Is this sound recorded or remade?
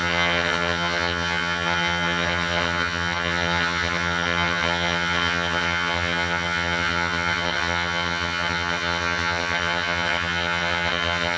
remade